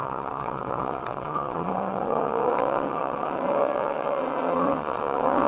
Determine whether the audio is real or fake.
fake